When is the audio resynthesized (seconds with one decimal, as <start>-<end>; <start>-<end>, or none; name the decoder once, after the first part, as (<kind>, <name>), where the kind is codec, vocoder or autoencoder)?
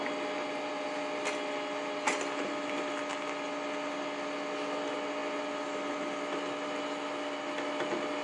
none